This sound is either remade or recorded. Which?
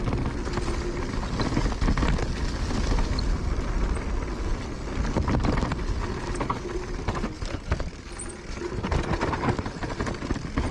recorded